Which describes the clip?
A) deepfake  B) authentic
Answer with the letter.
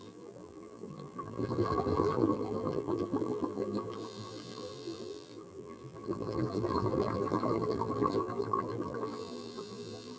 A